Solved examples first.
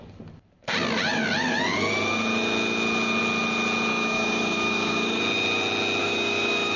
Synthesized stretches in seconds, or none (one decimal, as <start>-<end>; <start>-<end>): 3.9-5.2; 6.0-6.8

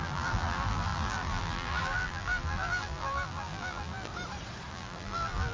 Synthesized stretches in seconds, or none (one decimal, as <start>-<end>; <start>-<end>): 0.0-4.1; 4.7-5.5

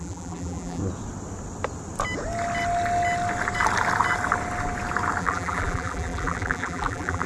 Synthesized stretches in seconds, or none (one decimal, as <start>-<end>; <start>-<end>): 0.0-0.8; 5.2-7.3

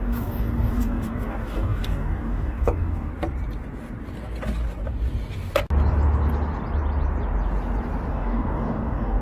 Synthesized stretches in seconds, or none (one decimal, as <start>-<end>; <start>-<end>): 0.0-3.1; 8.1-9.2

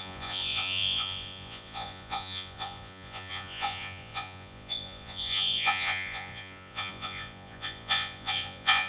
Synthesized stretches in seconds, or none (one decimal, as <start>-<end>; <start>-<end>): 0.0-8.9

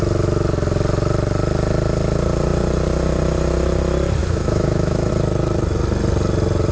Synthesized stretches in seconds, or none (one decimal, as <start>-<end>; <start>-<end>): 4.2-5.1

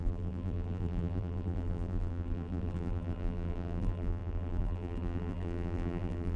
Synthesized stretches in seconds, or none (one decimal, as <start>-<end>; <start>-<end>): 0.0-6.4

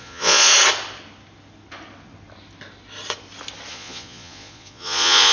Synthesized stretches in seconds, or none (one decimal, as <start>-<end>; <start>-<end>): 0.0-0.5; 3.7-5.3